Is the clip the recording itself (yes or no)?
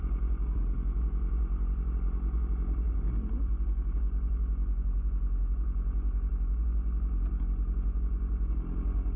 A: yes